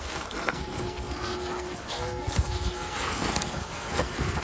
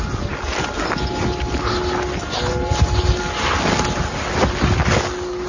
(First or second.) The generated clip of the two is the first